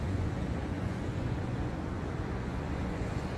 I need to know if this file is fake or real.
fake